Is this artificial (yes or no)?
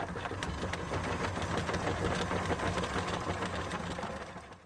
no